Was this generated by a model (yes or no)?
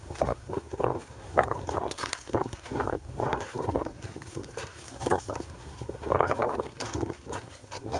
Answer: yes